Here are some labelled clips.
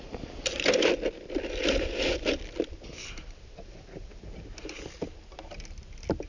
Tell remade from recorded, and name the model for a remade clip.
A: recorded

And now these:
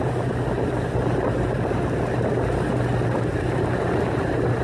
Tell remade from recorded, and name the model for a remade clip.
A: recorded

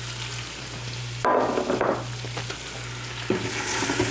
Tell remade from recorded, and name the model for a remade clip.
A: recorded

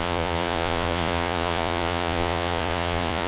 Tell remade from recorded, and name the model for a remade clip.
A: remade, vocoder, Vocos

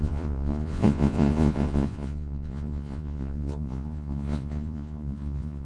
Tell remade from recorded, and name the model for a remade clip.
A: remade, vocoder, Vocos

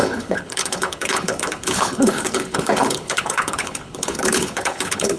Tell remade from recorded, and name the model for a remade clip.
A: remade, codec, HILCodec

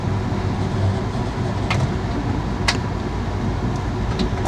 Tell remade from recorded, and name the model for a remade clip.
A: recorded